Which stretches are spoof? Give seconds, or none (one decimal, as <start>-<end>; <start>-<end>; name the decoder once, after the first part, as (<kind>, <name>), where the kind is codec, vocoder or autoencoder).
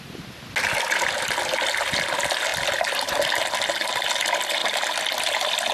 none